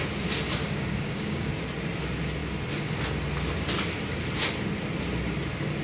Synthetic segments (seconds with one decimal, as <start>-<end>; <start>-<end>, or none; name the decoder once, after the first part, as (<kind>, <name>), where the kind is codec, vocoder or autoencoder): 0.6-1.5 (codec, DAC)